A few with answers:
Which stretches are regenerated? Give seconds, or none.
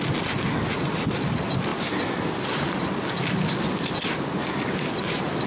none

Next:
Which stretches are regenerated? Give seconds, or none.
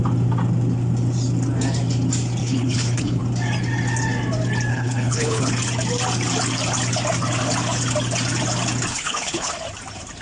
2.4-3.2 (codec, HILCodec); 4.7-5.5; 8.9-9.5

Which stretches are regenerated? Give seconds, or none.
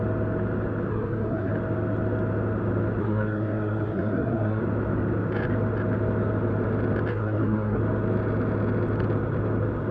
0.9-1.5 (codec, SNAC); 3.0-4.6; 7.1-7.8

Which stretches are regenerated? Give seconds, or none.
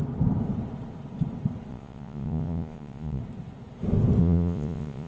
1.7-3.2 (vocoder, Vocos); 4.2-5.1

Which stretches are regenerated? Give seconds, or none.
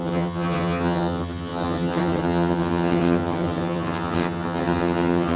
0.0-5.4 (vocoder, HiFi-GAN)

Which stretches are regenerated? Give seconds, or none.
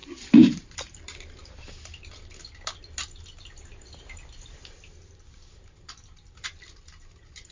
0.0-1.7 (vocoder, BigVGAN v2)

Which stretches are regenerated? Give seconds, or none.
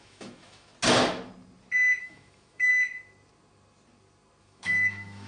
0.0-0.7 (autoencoder, DAC-VAE); 2.0-2.7; 4.4-5.3